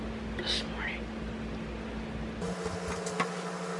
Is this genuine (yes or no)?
yes